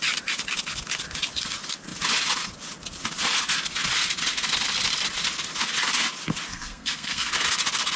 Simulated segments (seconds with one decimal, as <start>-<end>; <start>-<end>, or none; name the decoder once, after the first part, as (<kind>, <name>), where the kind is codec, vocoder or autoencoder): 6.5-7.3 (codec, SNAC)